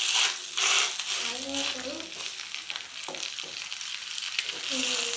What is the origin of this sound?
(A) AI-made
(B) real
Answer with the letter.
B